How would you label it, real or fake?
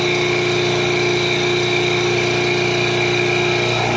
real